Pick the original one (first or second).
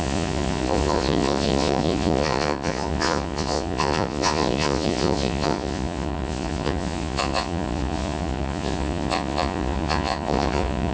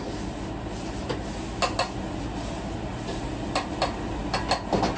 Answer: second